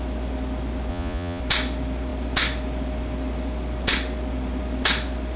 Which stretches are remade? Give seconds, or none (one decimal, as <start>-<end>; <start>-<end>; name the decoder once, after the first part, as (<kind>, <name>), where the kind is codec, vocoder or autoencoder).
0.9-1.4 (vocoder, Vocos)